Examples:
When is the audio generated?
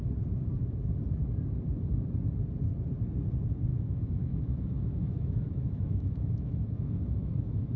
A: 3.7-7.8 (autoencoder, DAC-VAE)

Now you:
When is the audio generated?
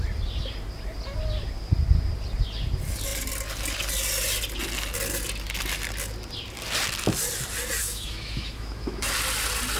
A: 7.8-9.1 (autoencoder, DAC-VAE)